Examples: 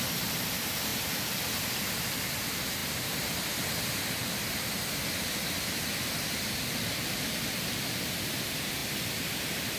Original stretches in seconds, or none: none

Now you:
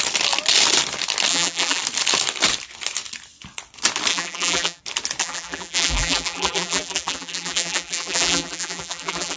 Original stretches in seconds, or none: 0.0-1.3; 1.8-4.1; 4.8-5.2